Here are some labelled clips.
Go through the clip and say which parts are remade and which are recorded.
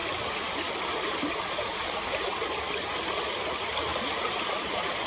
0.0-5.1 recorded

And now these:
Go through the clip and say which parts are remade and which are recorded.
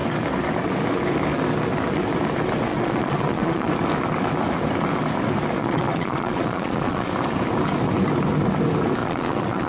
0.0-2.7 recorded; 2.7-3.7 remade; 3.7-5.6 recorded; 5.6-7.1 remade; 7.1-9.0 recorded; 9.0-9.7 remade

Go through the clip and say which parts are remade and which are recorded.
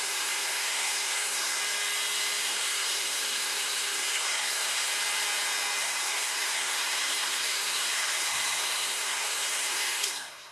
0.0-1.6 remade; 1.6-2.4 recorded; 2.4-4.9 remade; 4.9-5.8 recorded; 5.8-10.5 remade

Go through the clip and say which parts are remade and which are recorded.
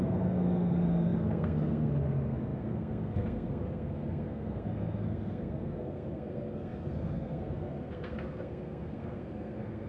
0.0-9.9 remade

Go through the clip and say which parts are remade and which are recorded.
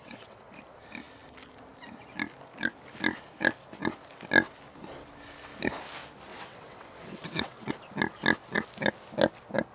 0.0-0.5 remade; 0.5-6.3 recorded; 6.3-7.7 remade; 7.7-9.7 recorded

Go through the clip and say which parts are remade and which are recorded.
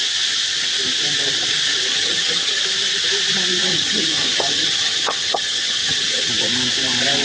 0.0-1.9 recorded; 1.9-2.6 remade; 2.6-3.7 recorded; 3.7-6.3 remade; 6.3-7.2 recorded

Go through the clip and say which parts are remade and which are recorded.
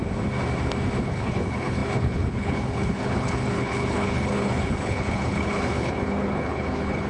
0.0-1.0 recorded; 1.0-7.1 remade